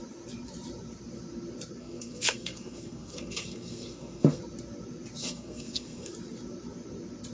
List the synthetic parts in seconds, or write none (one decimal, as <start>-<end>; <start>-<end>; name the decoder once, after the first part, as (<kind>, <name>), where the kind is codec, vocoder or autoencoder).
1.8-4.4 (codec, SNAC); 5.2-6.1